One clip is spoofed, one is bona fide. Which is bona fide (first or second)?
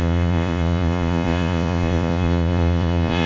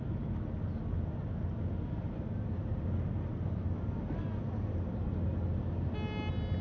second